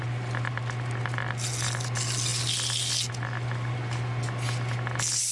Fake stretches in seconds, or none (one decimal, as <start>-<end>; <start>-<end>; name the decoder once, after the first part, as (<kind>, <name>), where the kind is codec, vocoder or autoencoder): none